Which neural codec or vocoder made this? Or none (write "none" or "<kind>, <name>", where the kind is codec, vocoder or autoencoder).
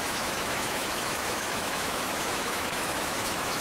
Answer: autoencoder, DAC-VAE